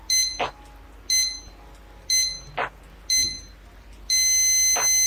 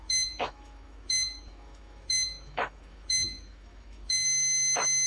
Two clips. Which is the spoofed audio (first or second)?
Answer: second